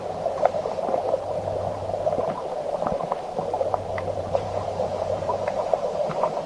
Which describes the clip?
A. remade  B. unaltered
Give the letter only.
A